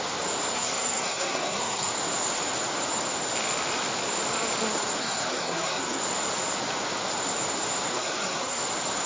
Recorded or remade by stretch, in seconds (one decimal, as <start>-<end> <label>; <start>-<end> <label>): 0.0-0.5 recorded; 0.5-1.9 remade; 1.9-5.0 recorded; 5.0-6.0 remade; 6.0-7.9 recorded; 7.9-8.6 remade; 8.6-9.1 recorded